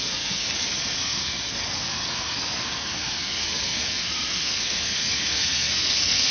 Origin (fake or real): fake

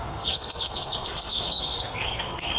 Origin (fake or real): fake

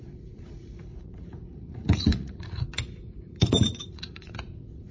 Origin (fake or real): fake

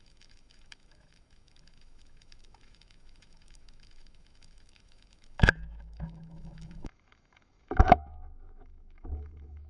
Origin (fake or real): fake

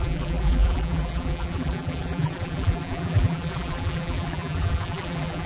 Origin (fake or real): fake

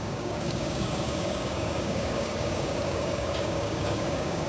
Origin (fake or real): fake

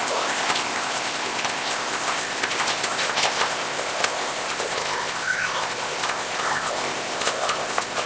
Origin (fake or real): fake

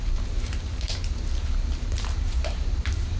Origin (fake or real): fake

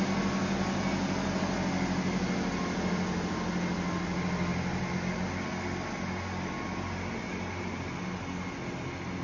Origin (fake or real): real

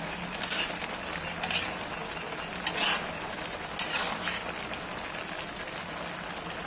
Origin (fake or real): real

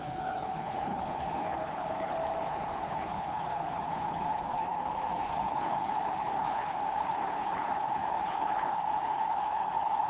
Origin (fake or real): fake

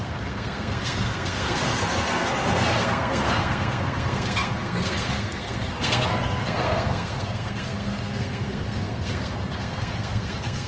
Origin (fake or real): fake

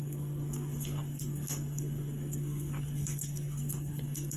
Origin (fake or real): fake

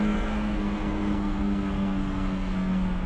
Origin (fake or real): fake